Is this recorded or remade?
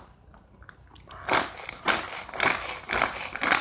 recorded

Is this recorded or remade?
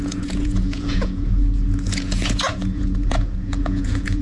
remade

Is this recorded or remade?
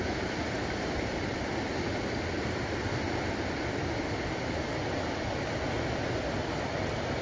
recorded